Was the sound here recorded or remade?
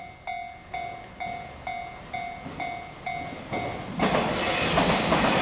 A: recorded